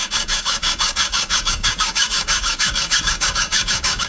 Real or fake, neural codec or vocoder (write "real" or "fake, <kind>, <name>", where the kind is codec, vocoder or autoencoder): fake, codec, DAC